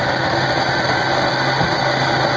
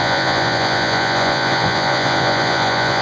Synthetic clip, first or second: second